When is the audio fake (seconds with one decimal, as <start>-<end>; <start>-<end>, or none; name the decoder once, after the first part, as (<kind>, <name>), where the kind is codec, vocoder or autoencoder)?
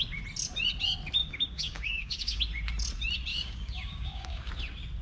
1.2-2.4 (codec, DAC); 3.3-4.5